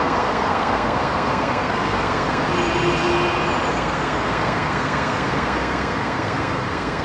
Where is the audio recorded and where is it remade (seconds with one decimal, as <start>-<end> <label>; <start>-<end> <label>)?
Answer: 0.0-2.4 remade; 2.4-3.7 recorded; 3.7-7.0 remade